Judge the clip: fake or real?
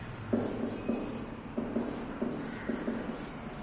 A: real